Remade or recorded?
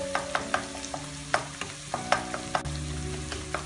recorded